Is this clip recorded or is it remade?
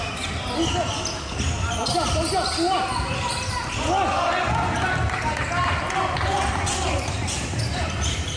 recorded